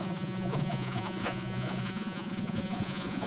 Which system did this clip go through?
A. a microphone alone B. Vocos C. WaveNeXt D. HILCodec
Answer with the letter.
B